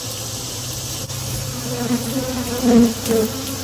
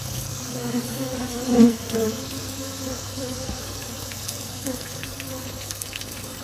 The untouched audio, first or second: first